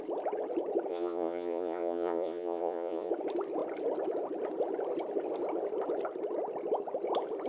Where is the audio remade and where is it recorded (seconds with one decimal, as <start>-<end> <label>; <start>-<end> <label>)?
0.0-0.9 recorded; 0.9-3.1 remade; 3.1-7.5 recorded

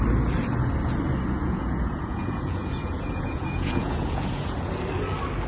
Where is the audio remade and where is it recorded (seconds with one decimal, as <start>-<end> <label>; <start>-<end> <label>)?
0.0-1.4 recorded; 1.4-4.7 remade; 4.7-5.5 recorded

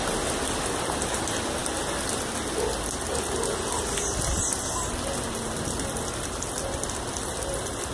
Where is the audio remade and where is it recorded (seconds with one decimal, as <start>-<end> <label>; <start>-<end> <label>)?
0.0-7.9 recorded

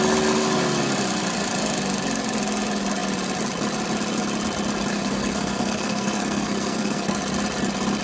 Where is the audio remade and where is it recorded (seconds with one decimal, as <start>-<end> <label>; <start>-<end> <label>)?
0.0-4.9 recorded; 4.9-7.2 remade; 7.2-8.0 recorded

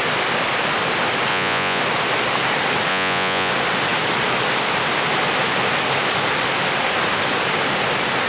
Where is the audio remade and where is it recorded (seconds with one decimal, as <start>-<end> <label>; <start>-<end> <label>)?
0.0-1.3 recorded; 1.3-1.8 remade; 1.8-2.9 recorded; 2.9-3.5 remade; 3.5-8.3 recorded

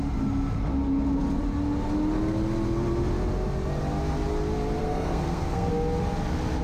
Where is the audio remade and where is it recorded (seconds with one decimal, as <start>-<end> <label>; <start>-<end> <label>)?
0.0-4.8 recorded; 4.8-5.7 remade; 5.7-6.6 recorded

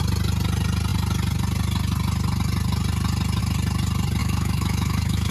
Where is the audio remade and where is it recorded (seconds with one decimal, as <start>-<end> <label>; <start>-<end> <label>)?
0.0-4.2 recorded; 4.2-5.3 remade

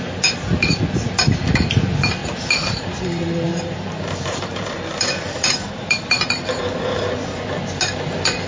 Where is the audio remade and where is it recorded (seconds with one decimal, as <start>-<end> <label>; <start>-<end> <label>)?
0.0-3.5 recorded; 3.5-7.3 remade; 7.3-8.5 recorded